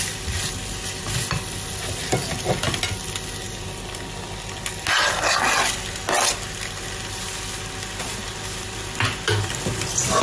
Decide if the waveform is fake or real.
real